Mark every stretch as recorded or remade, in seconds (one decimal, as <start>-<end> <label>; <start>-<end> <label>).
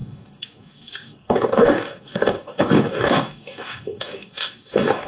0.0-5.1 remade